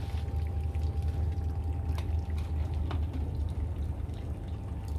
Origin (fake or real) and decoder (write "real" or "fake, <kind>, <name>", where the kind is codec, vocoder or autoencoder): real